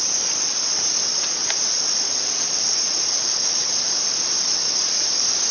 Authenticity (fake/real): fake